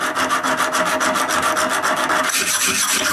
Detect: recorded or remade recorded